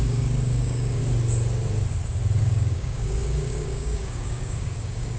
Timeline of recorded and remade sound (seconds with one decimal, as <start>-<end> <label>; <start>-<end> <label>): 0.0-1.0 remade; 1.0-2.4 recorded; 2.4-5.2 remade